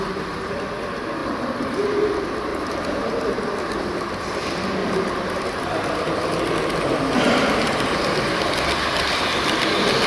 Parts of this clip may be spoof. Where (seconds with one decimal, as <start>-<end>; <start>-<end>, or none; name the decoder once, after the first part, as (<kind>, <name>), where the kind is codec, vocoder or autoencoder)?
1.2-2.1 (vocoder, BigVGAN v2); 2.5-3.4; 4.8-6.2